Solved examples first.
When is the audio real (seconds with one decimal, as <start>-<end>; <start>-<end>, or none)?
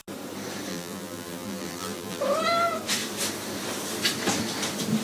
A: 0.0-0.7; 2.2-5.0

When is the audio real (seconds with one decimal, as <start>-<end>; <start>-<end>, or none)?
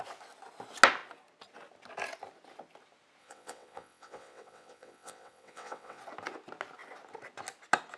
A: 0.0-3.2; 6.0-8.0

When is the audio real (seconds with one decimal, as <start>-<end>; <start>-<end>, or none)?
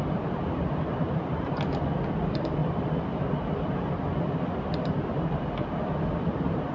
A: 2.6-6.7